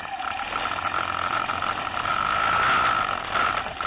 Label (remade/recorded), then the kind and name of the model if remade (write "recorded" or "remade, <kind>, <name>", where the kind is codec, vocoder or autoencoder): recorded